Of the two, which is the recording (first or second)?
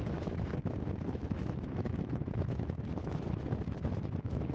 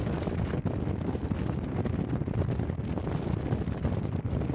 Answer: second